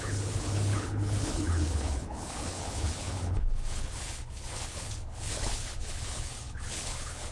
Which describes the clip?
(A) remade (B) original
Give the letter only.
A